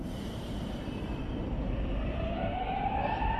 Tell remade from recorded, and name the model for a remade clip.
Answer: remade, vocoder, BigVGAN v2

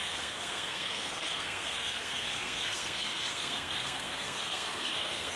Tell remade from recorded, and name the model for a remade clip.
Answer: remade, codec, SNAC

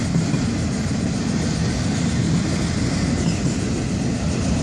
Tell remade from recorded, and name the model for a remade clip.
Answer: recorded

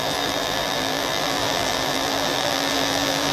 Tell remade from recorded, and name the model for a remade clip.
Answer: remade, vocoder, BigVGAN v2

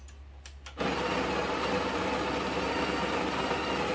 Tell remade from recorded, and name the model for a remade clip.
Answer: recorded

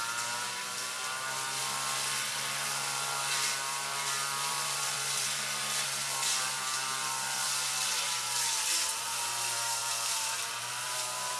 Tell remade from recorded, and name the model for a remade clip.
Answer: remade, vocoder, BigVGAN v2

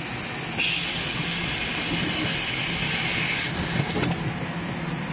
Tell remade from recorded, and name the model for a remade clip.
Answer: recorded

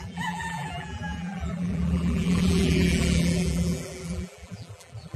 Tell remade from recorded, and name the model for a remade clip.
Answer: remade, vocoder, BigVGAN v2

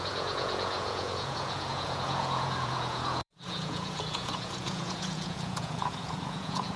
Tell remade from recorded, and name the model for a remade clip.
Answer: remade, vocoder, Vocos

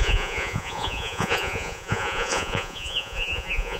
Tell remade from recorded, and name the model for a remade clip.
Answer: remade, vocoder, Vocos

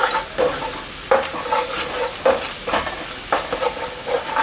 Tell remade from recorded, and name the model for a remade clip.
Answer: recorded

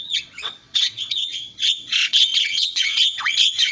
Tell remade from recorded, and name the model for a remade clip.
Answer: remade, vocoder, WaveNeXt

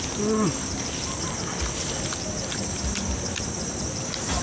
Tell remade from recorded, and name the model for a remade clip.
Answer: remade, vocoder, BigVGAN v2